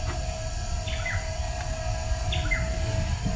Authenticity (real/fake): real